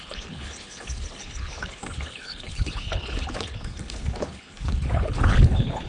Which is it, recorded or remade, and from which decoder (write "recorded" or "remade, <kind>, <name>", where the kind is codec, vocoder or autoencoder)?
remade, codec, HILCodec